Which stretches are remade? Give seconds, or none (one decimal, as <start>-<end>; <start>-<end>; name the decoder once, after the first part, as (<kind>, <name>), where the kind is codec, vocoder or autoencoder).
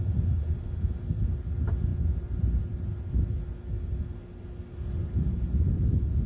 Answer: 5.0-5.7 (vocoder, BigVGAN v2)